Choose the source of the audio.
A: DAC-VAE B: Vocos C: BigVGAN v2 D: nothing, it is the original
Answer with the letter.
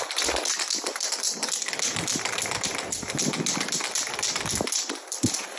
C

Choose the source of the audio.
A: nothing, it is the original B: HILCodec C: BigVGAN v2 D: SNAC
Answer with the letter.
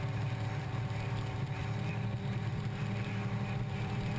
C